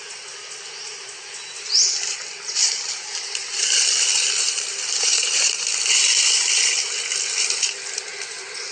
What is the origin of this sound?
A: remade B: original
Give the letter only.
B